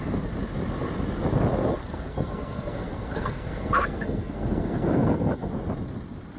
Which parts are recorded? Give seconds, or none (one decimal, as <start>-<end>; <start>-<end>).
0.0-1.8; 5.5-6.4